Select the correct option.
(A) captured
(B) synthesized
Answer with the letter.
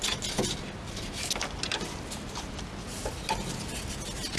A